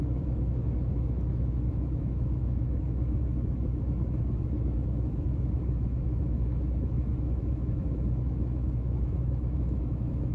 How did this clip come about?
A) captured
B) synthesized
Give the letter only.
B